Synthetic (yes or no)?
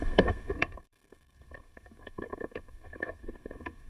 yes